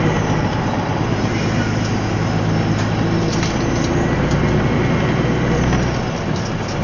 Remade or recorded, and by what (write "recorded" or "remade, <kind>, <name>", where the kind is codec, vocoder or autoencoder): recorded